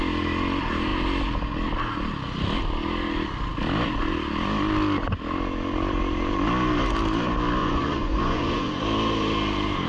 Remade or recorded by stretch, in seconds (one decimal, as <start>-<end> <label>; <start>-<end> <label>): 0.0-7.6 recorded; 7.6-8.8 remade; 8.8-9.9 recorded

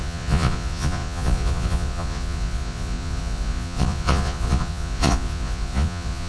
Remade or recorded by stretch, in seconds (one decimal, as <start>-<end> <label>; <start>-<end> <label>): 0.0-6.3 remade

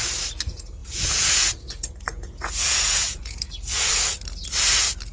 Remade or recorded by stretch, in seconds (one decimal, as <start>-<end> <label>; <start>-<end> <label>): 0.0-0.8 recorded; 0.8-3.9 remade; 3.9-5.1 recorded